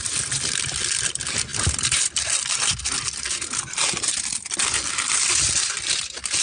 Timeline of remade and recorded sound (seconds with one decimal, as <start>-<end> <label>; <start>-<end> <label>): 0.0-6.4 recorded